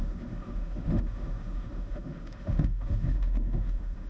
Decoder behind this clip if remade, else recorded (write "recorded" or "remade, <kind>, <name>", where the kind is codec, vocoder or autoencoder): remade, autoencoder, DAC-VAE